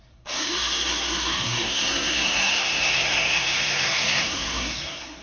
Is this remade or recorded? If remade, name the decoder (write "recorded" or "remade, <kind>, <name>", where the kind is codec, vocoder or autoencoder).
remade, codec, SNAC